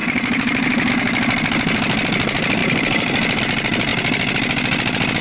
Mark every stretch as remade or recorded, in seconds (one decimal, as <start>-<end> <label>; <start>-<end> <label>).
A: 0.0-0.9 remade; 0.9-2.6 recorded; 2.6-3.4 remade; 3.4-5.2 recorded

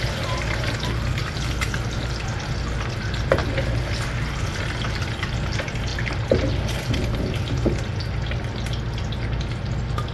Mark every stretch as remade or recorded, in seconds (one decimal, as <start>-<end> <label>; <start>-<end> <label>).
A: 0.0-10.1 recorded